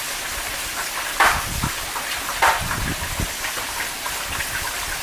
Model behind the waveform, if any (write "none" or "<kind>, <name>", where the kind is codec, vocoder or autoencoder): vocoder, BigVGAN v2